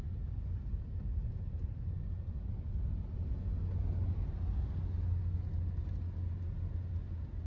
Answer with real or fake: real